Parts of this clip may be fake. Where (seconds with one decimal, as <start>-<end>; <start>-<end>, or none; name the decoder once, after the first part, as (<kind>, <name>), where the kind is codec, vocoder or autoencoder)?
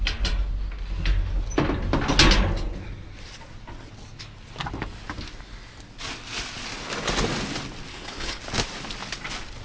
7.9-8.4 (codec, HILCodec)